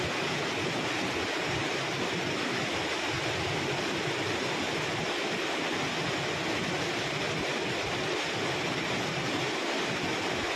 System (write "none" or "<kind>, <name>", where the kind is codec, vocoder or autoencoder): none